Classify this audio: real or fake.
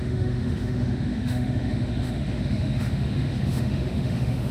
fake